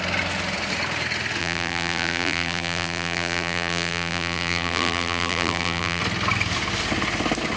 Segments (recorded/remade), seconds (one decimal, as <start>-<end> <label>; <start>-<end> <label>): 0.0-1.4 recorded; 1.4-6.0 remade; 6.0-7.6 recorded